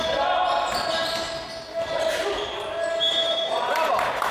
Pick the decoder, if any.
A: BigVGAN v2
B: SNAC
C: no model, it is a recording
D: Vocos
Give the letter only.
C